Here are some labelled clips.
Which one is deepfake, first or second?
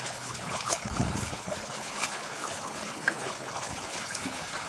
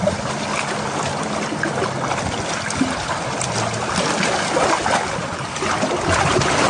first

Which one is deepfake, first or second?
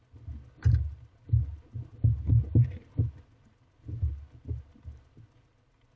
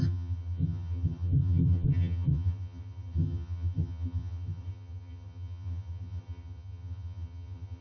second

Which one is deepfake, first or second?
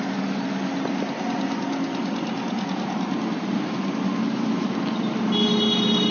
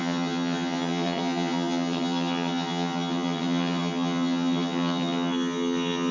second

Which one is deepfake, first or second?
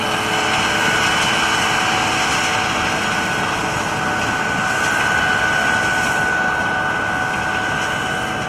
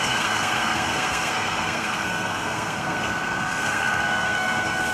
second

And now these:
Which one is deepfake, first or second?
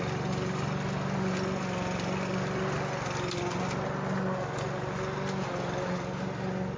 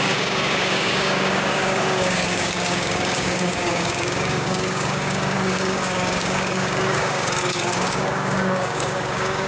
second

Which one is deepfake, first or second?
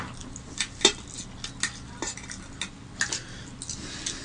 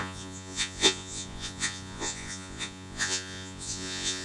second